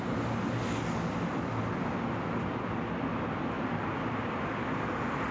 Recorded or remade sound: recorded